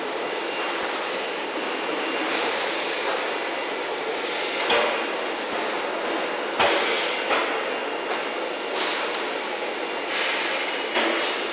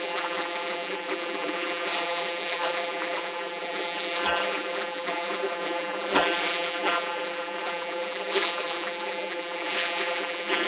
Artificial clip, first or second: second